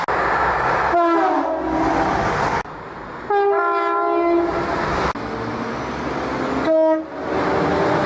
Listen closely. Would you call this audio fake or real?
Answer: real